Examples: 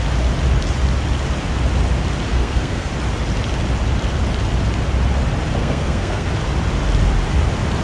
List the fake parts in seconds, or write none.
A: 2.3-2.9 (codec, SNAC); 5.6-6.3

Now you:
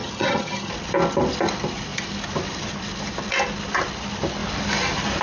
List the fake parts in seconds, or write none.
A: 0.0-0.7 (vocoder, HiFi-GAN)

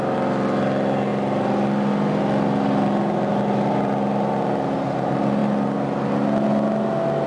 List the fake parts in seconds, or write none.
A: none

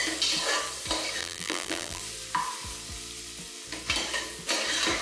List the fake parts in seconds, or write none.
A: 1.2-2.0 (vocoder, BigVGAN v2)

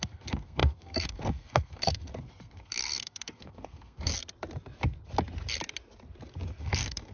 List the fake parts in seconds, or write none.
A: 0.0-4.1 (codec, SNAC); 6.6-7.1

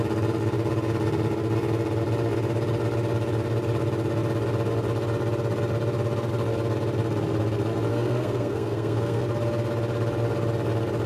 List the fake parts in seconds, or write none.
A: 7.9-9.2 (codec, SNAC)